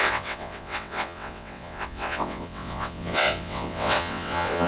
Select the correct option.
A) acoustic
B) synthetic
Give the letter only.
B